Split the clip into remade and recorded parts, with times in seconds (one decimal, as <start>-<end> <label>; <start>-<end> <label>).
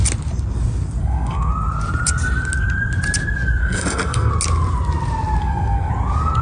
0.0-1.0 recorded; 1.0-1.5 remade; 1.5-3.6 recorded; 3.6-4.3 remade; 4.3-5.4 recorded; 5.4-5.9 remade; 5.9-6.4 recorded